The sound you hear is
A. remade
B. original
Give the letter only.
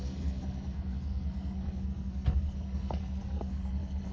A